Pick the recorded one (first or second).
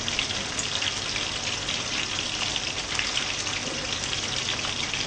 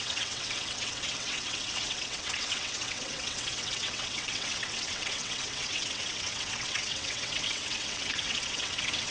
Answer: first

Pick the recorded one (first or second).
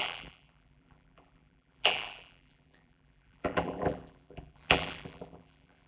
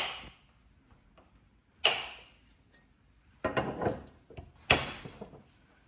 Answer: second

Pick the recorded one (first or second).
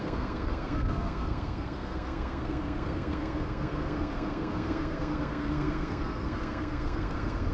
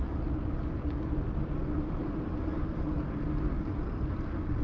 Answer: second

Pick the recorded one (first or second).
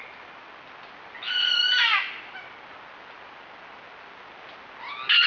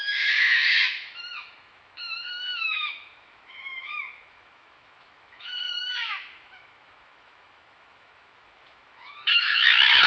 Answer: first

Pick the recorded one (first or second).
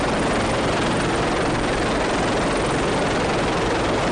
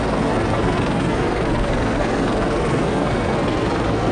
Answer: first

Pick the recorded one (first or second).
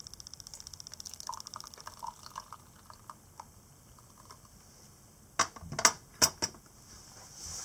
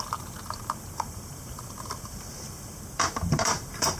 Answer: first